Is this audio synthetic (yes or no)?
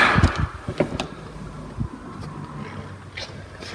no